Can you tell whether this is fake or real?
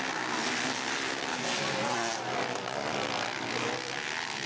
real